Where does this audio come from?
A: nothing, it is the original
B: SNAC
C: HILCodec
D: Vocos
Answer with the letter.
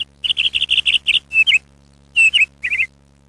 A